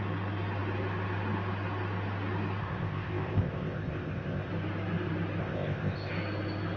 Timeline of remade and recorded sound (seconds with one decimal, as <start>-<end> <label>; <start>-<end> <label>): 0.0-2.6 recorded; 2.6-4.5 remade; 4.5-5.4 recorded; 5.4-6.1 remade; 6.1-6.8 recorded